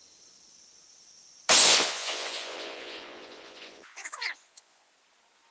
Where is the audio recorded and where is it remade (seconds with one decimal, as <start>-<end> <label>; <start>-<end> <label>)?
0.0-1.6 recorded; 1.6-4.9 remade; 4.9-5.5 recorded